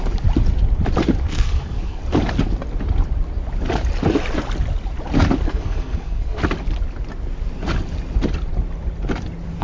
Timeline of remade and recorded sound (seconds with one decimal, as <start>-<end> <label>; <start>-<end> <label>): 0.0-1.2 recorded; 1.2-2.0 remade; 2.0-5.5 recorded; 5.5-6.4 remade; 6.4-9.6 recorded